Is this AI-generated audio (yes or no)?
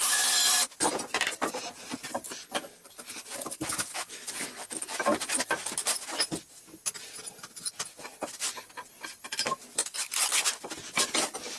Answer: no